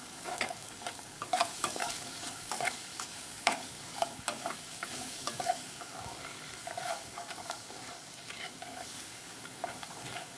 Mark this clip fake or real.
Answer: fake